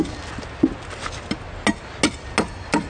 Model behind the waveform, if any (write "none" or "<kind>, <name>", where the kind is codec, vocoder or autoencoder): none